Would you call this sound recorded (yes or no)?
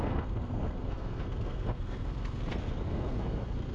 no